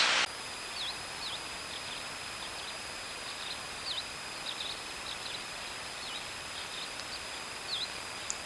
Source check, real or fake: real